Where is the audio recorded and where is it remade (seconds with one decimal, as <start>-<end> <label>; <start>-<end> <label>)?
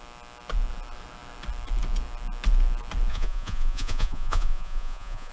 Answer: 0.0-3.1 recorded; 3.1-5.3 remade